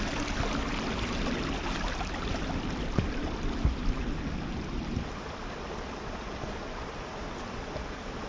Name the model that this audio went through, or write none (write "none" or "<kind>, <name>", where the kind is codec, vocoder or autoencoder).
none